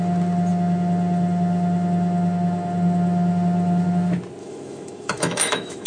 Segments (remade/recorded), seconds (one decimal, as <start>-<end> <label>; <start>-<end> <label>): 0.0-4.4 recorded; 4.4-5.9 remade